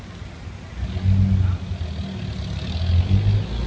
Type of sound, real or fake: real